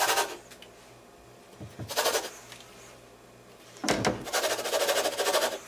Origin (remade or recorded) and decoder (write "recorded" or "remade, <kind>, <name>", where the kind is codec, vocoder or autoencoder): recorded